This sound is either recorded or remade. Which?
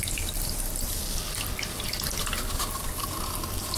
recorded